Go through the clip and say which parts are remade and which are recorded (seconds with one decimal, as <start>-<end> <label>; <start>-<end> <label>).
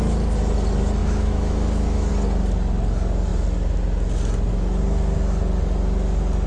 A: 0.0-1.0 recorded; 1.0-2.1 remade; 2.1-6.5 recorded